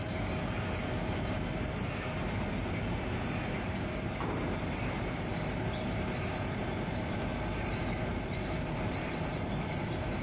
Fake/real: fake